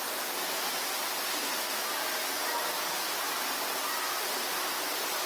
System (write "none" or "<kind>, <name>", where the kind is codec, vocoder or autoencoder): vocoder, BigVGAN v2